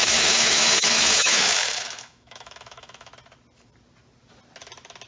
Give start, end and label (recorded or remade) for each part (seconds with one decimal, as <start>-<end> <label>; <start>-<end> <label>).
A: 0.0-3.1 remade; 3.1-5.1 recorded